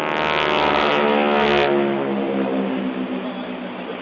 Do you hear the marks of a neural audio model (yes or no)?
no